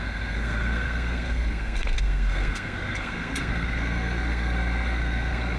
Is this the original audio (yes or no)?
no